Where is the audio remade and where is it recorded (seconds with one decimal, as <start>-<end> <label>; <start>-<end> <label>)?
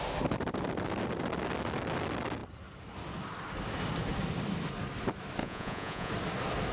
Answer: 0.0-5.4 recorded; 5.4-6.1 remade; 6.1-6.7 recorded